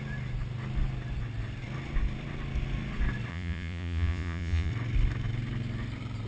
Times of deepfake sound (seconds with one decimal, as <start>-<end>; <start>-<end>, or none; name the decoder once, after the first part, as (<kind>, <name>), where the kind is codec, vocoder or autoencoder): 3.3-4.7 (vocoder, Vocos)